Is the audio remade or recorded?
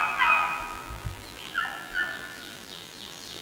remade